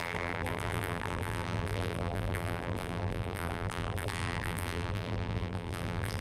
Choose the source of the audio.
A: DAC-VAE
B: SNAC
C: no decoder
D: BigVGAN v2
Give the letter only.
D